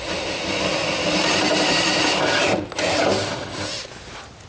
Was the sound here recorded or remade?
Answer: recorded